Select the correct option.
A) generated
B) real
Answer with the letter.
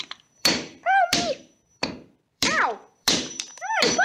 A